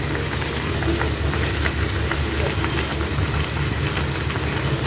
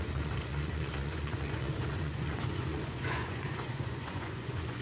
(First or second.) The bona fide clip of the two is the first